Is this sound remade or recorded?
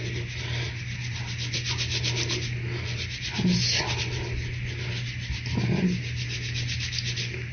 recorded